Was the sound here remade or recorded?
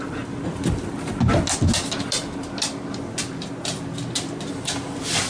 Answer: recorded